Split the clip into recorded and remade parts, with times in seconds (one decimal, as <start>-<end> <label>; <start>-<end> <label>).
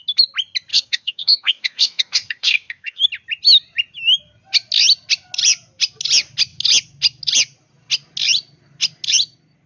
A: 0.0-0.7 recorded; 0.7-3.0 remade; 3.0-9.7 recorded